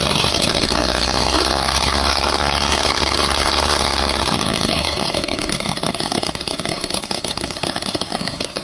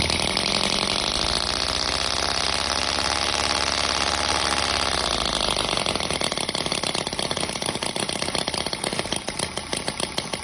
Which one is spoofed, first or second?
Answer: first